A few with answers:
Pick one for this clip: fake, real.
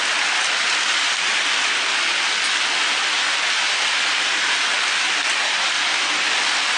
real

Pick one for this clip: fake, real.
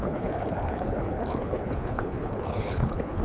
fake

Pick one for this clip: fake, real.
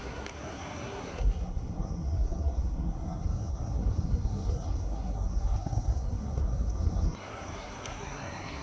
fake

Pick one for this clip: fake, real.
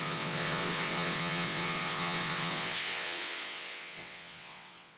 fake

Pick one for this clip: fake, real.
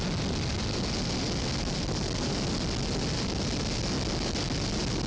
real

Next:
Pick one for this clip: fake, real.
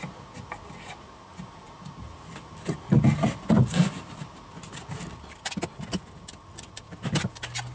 real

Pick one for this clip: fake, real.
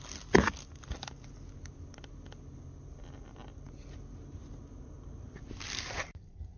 real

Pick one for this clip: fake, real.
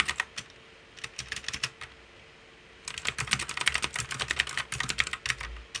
real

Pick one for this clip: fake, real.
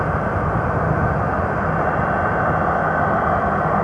real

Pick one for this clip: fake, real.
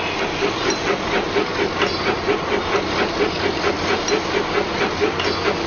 real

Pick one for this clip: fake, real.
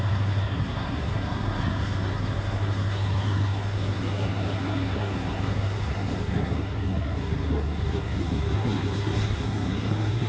fake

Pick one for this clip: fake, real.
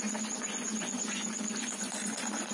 fake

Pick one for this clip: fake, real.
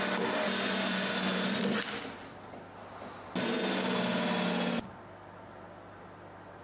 real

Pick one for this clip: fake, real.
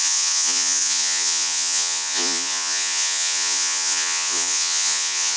fake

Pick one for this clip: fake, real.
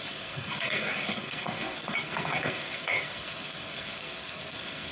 fake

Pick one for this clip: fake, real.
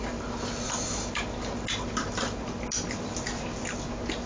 real